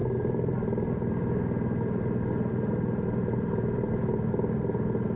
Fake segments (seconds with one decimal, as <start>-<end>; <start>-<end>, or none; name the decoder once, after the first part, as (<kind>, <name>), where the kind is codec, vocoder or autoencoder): none